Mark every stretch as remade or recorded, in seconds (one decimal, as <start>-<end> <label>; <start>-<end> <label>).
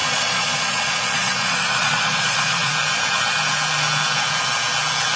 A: 0.0-2.7 remade; 2.7-5.2 recorded